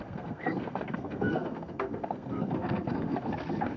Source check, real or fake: fake